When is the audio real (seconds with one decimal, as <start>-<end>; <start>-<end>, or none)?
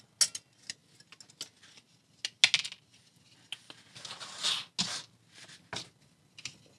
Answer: 0.0-6.8